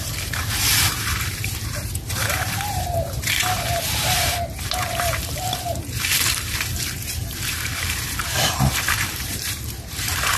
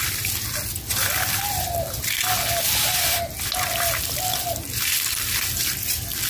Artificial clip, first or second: first